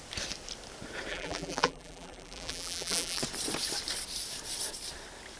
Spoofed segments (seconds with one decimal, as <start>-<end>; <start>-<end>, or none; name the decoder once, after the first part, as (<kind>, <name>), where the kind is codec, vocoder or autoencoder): 1.1-3.2 (vocoder, BigVGAN v2)